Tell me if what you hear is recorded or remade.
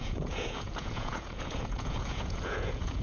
remade